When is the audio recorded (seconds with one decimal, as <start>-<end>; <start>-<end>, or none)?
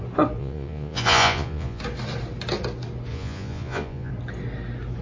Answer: 0.0-0.4; 1.8-3.1; 4.1-5.0